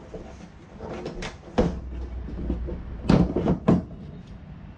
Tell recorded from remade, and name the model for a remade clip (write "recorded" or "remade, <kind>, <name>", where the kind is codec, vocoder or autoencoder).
recorded